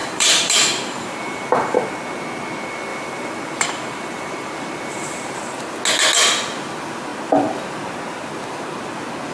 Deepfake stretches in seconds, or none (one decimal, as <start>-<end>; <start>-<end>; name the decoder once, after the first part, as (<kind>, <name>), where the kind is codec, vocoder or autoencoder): 0.0-1.9 (vocoder, BigVGAN v2); 2.9-5.8